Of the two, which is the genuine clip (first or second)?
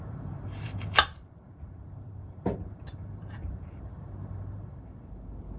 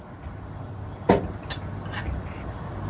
second